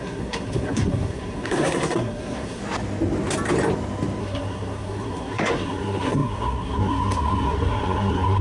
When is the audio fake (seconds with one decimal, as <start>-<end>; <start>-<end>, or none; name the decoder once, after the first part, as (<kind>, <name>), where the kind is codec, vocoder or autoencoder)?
0.0-2.6 (codec, SNAC); 4.2-8.4